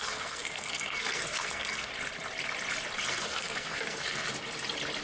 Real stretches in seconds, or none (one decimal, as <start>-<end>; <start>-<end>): 1.9-3.1; 4.3-5.0